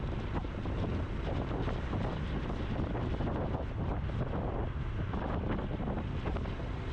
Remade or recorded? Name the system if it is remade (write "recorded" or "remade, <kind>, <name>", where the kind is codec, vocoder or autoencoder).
recorded